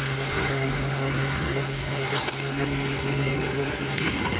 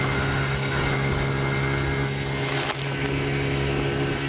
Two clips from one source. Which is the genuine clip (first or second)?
second